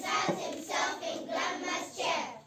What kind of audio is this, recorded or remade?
recorded